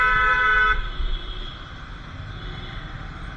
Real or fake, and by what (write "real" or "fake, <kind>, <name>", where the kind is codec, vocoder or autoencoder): real